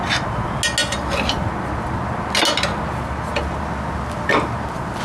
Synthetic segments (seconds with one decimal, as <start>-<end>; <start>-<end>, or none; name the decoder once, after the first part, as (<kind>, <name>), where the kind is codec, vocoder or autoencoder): none